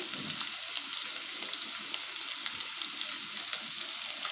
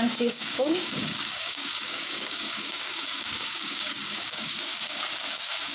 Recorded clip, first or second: first